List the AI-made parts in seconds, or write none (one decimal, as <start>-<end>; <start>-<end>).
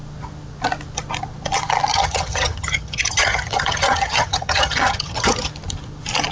1.9-5.5